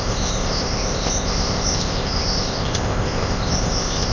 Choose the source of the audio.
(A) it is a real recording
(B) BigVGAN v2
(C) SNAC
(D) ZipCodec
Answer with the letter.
D